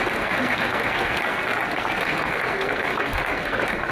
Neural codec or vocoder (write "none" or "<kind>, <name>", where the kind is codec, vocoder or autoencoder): codec, SNAC